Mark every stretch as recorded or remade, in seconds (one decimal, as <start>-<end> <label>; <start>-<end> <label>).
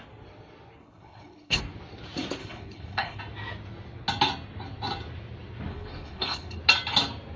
0.0-0.8 recorded; 0.8-1.6 remade; 1.6-2.4 recorded; 2.4-3.2 remade; 3.2-5.7 recorded; 5.7-6.6 remade; 6.6-7.4 recorded